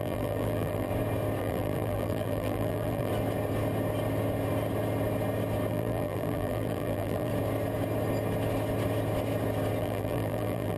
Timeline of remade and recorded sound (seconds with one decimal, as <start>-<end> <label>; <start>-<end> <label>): 0.0-0.9 remade; 0.9-1.4 recorded; 1.4-3.1 remade; 3.1-5.7 recorded; 5.7-7.3 remade; 7.3-9.8 recorded; 9.8-10.8 remade

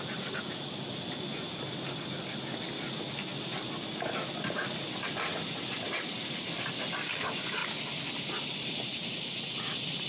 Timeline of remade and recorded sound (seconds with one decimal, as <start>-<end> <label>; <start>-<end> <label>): 0.0-7.6 recorded; 7.6-9.3 remade; 9.3-10.1 recorded

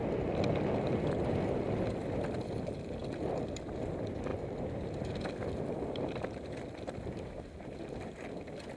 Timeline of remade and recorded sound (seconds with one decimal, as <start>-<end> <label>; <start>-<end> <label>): 0.0-3.0 recorded; 3.0-3.9 remade; 3.9-8.8 recorded

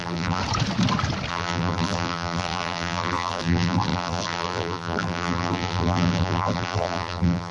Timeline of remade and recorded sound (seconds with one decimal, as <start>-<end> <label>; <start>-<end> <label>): 0.0-0.4 remade; 0.4-1.3 recorded; 1.3-7.5 remade

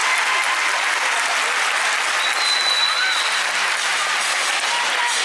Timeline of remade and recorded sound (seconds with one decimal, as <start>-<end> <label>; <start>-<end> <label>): 0.0-3.9 recorded; 3.9-4.5 remade; 4.5-5.2 recorded

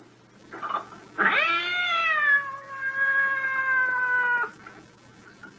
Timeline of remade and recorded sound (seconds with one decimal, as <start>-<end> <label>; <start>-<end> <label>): 0.0-5.6 recorded